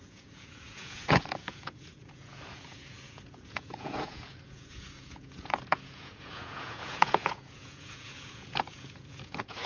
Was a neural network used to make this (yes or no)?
yes